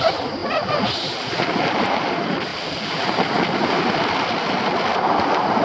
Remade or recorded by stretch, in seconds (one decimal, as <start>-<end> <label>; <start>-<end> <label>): 0.0-5.6 recorded